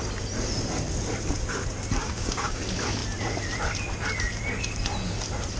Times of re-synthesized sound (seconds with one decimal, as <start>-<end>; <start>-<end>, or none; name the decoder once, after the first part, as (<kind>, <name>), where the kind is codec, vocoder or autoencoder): 2.0-2.6 (codec, DAC)